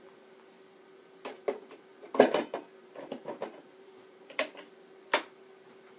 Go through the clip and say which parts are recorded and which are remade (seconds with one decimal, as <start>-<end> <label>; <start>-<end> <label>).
0.0-2.8 recorded; 2.8-4.7 remade; 4.7-6.0 recorded

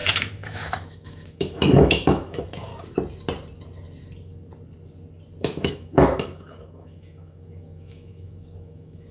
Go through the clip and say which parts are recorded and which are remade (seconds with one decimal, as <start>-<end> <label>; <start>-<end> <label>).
0.0-2.7 remade; 2.7-5.4 recorded; 5.4-9.1 remade

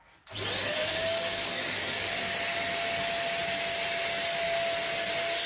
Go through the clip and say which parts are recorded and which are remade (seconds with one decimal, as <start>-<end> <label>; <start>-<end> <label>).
0.0-0.7 recorded; 0.7-2.2 remade; 2.2-5.5 recorded